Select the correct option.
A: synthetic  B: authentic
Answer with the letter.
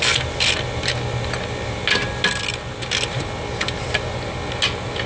B